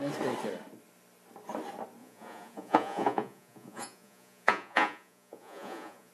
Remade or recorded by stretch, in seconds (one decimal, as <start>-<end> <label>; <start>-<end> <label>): 0.0-2.0 recorded; 2.0-6.1 remade